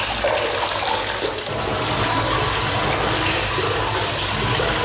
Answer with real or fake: real